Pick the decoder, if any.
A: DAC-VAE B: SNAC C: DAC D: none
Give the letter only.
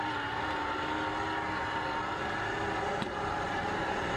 D